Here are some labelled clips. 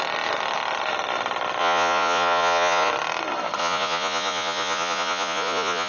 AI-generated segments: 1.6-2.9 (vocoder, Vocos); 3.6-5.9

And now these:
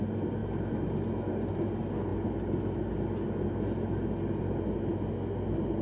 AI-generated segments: none